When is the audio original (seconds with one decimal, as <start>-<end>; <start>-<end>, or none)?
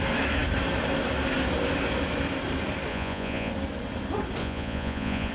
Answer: 0.0-2.9; 3.5-4.4